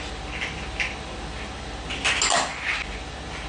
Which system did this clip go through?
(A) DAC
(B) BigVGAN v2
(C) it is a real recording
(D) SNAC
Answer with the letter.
C